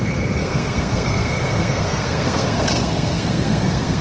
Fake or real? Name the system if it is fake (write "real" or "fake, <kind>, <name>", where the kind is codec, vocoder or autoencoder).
fake, codec, SNAC